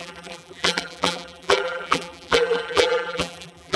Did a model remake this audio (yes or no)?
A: yes